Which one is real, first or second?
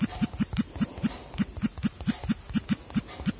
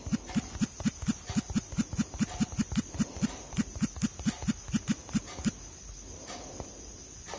second